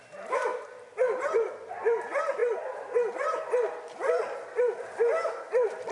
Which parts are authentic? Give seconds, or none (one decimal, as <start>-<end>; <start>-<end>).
2.4-3.1